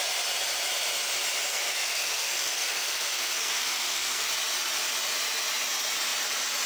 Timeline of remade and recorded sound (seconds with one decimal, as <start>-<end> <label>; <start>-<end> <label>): 0.0-1.5 recorded; 1.5-4.3 remade; 4.3-6.7 recorded